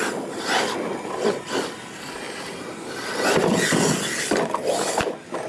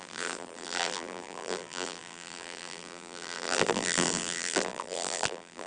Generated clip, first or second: second